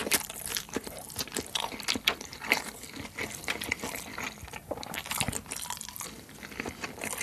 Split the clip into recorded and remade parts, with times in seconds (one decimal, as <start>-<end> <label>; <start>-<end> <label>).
0.0-0.5 recorded; 0.5-1.1 remade; 1.1-2.3 recorded; 2.3-2.8 remade; 2.8-4.6 recorded; 4.6-5.3 remade; 5.3-7.2 recorded